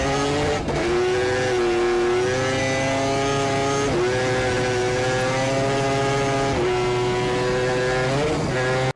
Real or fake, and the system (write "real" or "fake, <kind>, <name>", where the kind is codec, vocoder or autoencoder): real